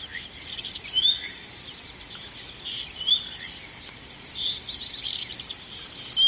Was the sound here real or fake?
real